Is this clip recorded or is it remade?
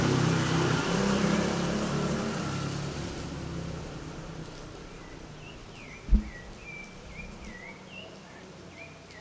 recorded